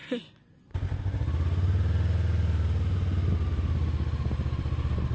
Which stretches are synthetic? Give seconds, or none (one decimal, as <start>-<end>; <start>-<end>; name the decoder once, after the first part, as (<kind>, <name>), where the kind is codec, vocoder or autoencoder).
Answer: none